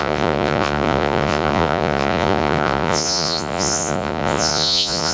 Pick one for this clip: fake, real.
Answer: fake